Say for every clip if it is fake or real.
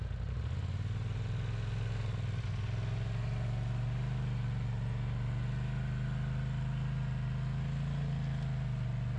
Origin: real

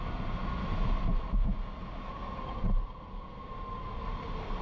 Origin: real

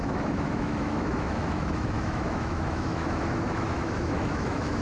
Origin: fake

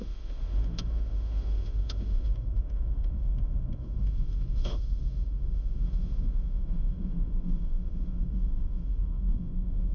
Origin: fake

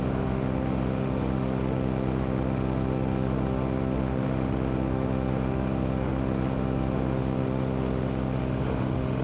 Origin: fake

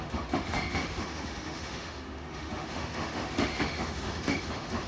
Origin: fake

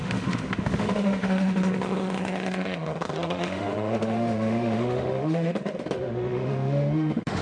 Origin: fake